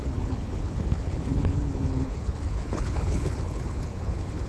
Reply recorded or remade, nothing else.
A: remade